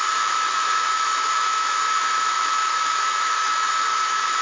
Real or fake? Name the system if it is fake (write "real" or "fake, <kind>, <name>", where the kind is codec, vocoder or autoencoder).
fake, autoencoder, DAC-VAE